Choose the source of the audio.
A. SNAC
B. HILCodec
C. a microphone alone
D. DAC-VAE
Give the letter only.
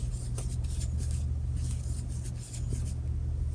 C